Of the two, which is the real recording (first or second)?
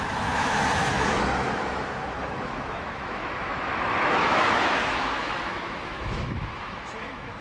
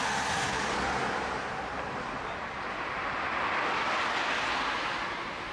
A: second